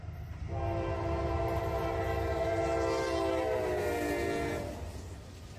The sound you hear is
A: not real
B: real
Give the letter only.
B